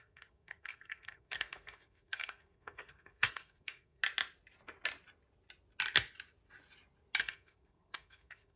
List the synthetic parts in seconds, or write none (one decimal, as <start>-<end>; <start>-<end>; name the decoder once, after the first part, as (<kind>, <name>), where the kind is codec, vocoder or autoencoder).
0.0-4.0 (codec, SNAC); 7.2-8.6